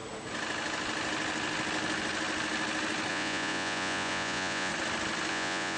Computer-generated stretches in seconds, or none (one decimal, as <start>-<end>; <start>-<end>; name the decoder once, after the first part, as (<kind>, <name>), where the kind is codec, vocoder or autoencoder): 3.1-4.7 (vocoder, Vocos); 5.3-5.8